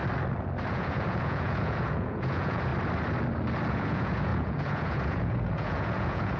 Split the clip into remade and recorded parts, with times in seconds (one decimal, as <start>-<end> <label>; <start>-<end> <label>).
0.0-0.7 recorded; 0.7-2.7 remade; 2.7-3.7 recorded; 3.7-6.4 remade